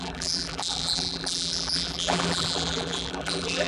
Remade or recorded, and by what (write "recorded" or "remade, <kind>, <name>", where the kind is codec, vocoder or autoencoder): remade, vocoder, BigVGAN v2